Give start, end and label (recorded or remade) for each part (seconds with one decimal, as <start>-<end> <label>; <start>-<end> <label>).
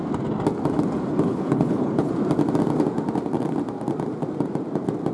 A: 0.0-1.3 recorded; 1.3-2.1 remade; 2.1-5.1 recorded